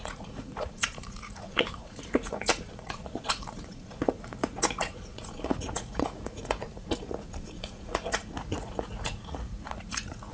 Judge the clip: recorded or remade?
remade